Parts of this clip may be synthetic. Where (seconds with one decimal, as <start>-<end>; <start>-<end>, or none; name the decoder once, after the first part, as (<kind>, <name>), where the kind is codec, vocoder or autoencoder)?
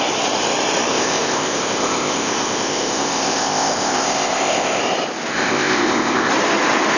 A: 0.9-4.8 (codec, ZipCodec); 5.3-6.3